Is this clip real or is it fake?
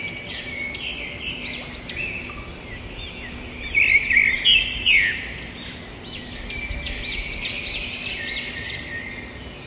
real